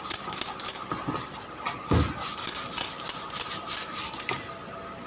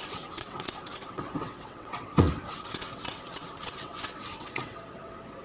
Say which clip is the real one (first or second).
first